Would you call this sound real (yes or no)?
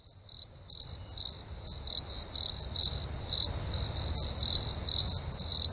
yes